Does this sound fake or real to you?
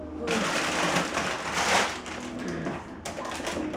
real